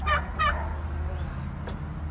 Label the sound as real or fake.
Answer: real